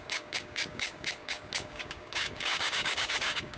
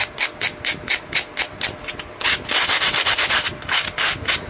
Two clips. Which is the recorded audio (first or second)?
second